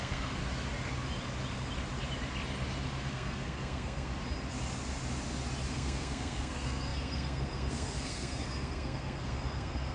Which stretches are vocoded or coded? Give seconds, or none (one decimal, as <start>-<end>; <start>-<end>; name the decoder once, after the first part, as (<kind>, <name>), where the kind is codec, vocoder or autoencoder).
0.0-0.4 (codec, SNAC); 3.0-4.1; 5.7-9.9